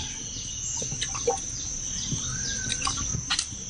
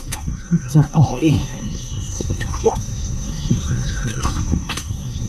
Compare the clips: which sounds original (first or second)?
first